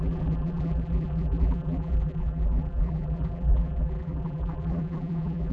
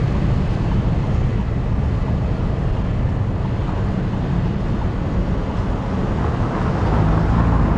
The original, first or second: second